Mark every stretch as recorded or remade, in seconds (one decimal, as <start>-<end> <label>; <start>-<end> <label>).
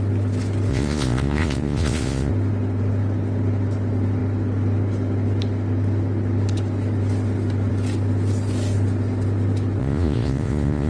0.0-0.7 recorded; 0.7-2.3 remade; 2.3-9.8 recorded; 9.8-10.9 remade